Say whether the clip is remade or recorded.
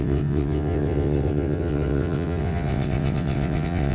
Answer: remade